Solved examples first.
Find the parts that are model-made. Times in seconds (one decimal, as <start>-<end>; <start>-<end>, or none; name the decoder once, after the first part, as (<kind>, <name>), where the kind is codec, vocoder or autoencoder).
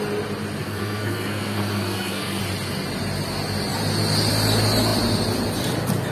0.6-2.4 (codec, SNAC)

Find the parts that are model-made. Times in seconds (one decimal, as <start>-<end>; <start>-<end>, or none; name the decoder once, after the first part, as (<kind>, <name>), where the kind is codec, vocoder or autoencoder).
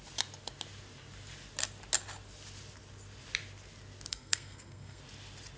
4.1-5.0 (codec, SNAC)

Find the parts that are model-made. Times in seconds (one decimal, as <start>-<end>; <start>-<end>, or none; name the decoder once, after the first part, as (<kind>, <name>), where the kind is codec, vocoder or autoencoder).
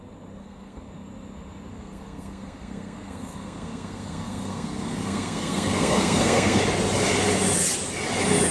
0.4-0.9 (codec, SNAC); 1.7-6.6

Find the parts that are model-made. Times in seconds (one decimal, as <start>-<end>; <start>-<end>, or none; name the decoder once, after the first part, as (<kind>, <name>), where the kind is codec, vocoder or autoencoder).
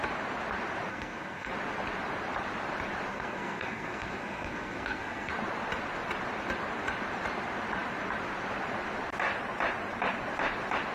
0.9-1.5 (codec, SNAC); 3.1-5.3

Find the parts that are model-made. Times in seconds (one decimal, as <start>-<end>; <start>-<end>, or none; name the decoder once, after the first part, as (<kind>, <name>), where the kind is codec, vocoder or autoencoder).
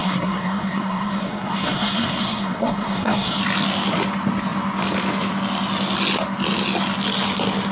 0.0-3.4 (codec, SNAC)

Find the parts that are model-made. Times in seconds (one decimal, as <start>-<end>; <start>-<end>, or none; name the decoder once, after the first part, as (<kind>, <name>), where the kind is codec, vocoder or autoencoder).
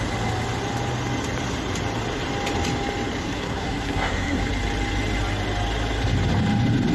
3.2-4.4 (codec, SNAC)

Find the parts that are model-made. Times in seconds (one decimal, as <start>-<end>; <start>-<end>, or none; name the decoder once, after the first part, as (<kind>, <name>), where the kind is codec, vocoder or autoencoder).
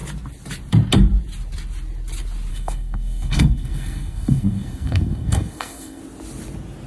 2.5-6.0 (codec, SNAC)